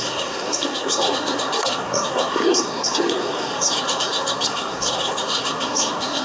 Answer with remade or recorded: remade